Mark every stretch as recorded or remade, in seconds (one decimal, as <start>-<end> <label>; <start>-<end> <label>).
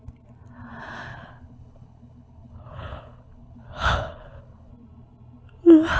0.0-1.1 recorded; 1.1-4.7 remade; 4.7-6.0 recorded